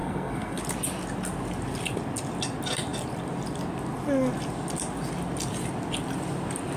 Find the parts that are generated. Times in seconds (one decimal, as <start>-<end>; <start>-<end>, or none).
0.0-0.6